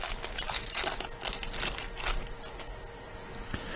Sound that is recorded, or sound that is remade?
recorded